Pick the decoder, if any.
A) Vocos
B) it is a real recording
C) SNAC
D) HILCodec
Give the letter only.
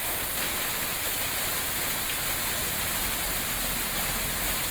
B